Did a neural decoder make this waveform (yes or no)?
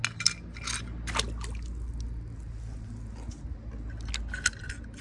no